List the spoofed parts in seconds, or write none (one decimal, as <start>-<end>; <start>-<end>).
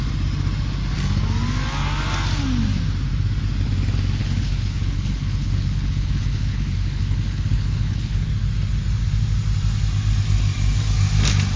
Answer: 4.2-8.3